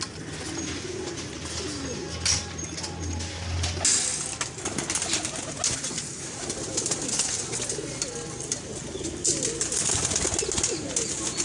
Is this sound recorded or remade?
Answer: recorded